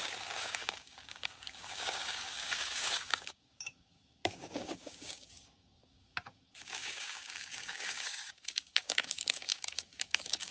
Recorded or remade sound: remade